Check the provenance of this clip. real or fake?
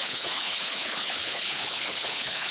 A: fake